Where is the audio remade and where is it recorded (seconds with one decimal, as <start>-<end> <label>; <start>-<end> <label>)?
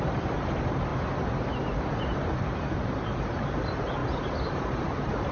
0.0-0.9 remade; 0.9-2.0 recorded; 2.0-5.3 remade